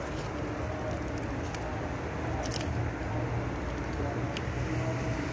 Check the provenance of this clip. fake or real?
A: real